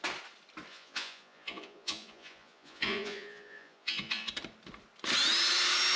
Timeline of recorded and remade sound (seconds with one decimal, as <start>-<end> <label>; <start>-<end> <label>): 0.0-0.7 recorded; 0.7-4.3 remade; 4.3-6.0 recorded